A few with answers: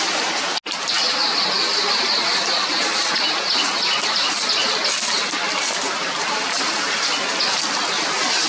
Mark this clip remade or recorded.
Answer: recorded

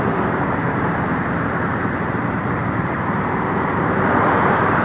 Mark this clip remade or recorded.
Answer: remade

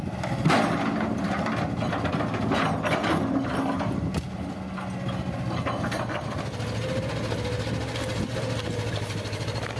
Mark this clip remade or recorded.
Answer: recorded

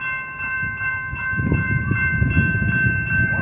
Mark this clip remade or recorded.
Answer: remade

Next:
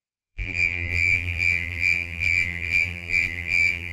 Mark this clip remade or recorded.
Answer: remade